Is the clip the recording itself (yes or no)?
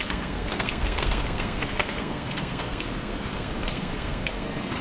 no